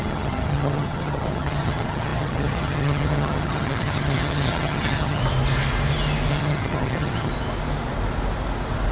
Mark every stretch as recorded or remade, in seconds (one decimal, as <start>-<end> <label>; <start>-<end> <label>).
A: 0.0-5.2 remade; 5.2-6.3 recorded; 6.3-7.3 remade; 7.3-8.9 recorded